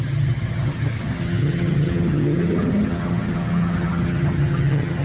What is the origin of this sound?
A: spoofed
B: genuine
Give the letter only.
A